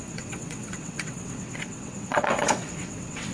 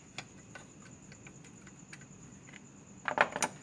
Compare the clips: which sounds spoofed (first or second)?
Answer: first